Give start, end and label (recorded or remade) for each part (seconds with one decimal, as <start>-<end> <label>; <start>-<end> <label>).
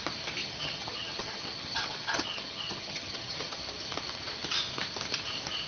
0.0-0.4 recorded; 0.4-3.6 remade; 3.6-5.7 recorded